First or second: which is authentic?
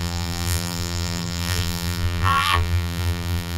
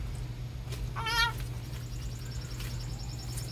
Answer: second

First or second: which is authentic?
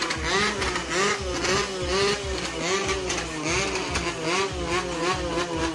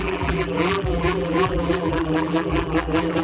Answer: first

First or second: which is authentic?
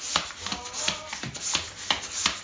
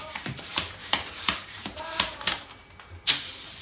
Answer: first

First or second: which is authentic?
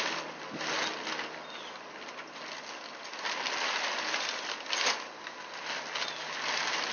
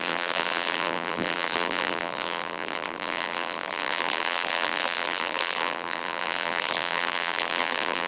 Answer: first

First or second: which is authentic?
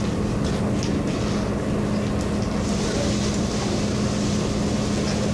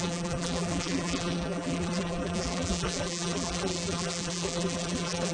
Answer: first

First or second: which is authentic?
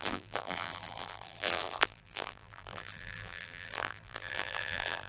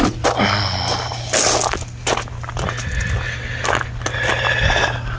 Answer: second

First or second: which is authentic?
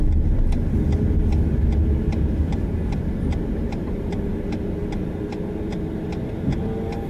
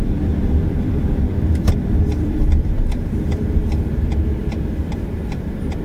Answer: first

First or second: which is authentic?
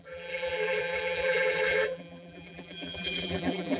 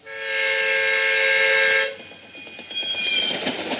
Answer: second